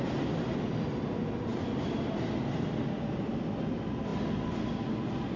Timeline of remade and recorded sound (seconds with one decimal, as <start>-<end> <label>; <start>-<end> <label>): 0.0-5.4 recorded